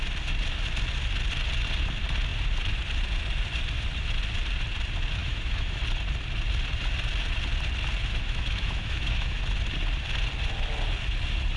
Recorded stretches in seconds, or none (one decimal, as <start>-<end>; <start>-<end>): 0.0-5.2; 5.8-8.1; 9.4-11.6